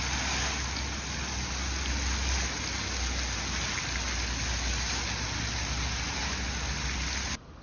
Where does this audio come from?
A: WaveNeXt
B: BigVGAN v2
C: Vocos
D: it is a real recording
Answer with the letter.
D